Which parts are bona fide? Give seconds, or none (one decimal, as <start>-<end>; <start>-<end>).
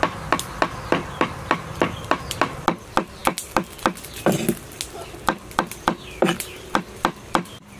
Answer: 0.0-7.8